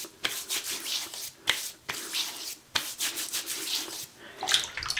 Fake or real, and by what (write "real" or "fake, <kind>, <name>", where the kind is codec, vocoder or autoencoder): fake, vocoder, BigVGAN v2